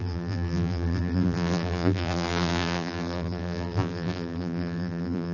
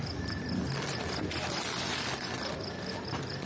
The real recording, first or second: second